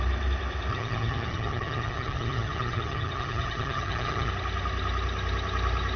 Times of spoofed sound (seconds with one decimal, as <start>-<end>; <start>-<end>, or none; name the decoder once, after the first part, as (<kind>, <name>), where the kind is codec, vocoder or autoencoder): 0.7-4.3 (vocoder, HiFi-GAN)